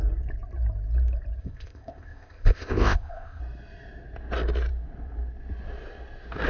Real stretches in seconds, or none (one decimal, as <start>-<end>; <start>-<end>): 0.0-1.4; 3.4-6.5